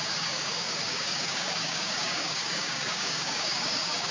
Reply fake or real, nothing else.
fake